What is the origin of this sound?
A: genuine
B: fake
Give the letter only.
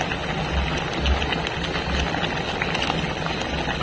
A